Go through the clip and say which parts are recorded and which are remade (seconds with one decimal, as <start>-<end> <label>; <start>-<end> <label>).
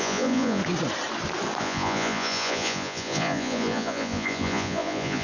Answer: 0.0-0.6 remade; 0.6-1.6 recorded; 1.6-5.2 remade